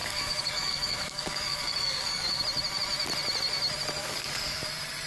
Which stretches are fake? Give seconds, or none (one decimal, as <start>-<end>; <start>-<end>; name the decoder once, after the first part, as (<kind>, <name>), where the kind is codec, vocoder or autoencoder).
0.0-2.4 (codec, DAC); 4.0-4.6